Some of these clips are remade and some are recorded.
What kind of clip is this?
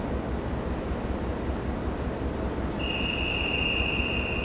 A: recorded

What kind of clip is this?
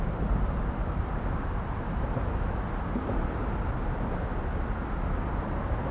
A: recorded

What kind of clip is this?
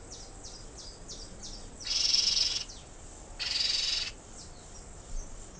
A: recorded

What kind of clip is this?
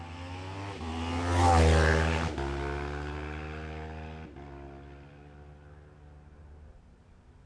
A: recorded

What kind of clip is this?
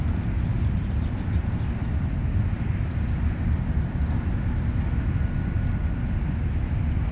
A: recorded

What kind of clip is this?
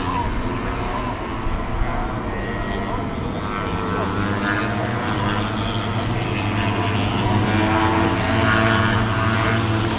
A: recorded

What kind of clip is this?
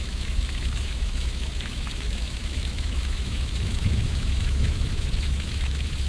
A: remade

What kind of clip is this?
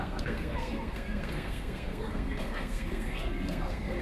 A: remade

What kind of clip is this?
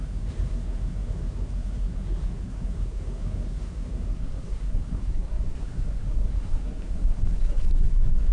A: remade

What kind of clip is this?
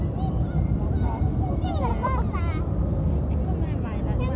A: recorded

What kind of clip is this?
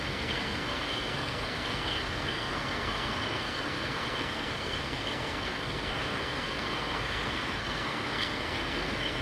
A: remade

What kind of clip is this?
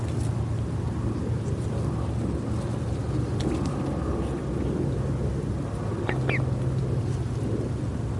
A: recorded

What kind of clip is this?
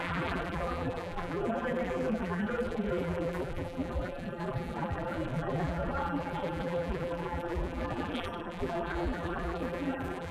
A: remade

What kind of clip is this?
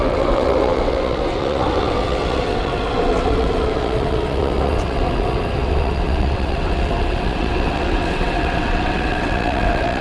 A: remade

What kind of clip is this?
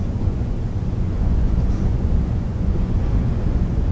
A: remade